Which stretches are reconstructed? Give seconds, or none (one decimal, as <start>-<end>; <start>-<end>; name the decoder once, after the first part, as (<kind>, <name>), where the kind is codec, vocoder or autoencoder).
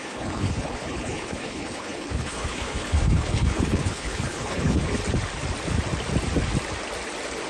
0.0-5.0 (codec, HILCodec)